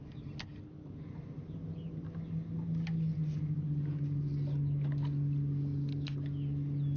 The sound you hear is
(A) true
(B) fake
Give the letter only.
A